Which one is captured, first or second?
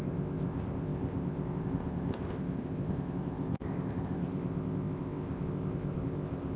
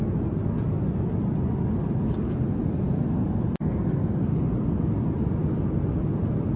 second